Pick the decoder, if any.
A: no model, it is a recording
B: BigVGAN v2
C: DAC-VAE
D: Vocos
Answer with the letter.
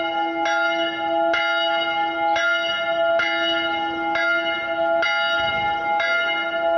A